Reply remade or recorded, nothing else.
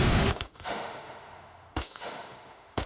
remade